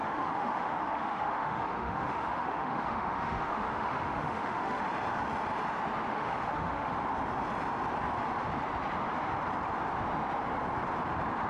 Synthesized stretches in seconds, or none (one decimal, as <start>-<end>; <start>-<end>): 0.0-4.8; 6.1-6.9